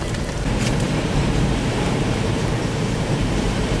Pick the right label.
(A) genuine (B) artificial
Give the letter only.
B